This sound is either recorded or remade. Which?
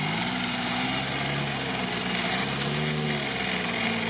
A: recorded